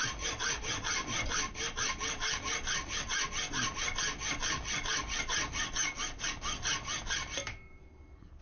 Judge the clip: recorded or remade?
recorded